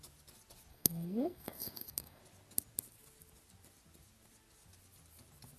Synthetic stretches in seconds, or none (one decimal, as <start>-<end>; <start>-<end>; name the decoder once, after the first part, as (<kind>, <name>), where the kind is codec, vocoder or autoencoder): 0.7-2.2 (codec, SNAC)